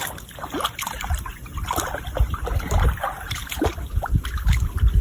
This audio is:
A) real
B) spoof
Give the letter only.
B